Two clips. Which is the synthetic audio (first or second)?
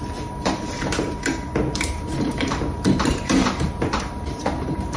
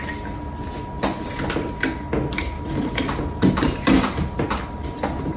first